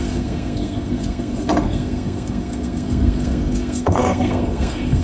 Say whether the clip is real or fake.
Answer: fake